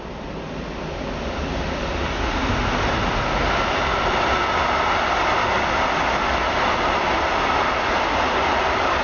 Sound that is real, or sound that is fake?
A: real